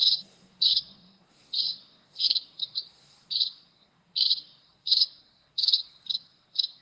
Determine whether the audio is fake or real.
fake